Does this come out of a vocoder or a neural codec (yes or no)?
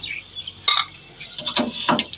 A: no